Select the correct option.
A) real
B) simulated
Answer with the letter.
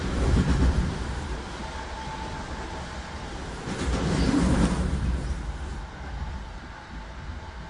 A